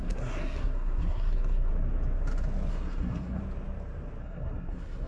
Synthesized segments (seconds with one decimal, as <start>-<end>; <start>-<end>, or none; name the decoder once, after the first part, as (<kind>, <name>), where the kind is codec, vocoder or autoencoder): 0.0-1.7 (codec, SNAC); 2.7-3.4; 4.2-5.1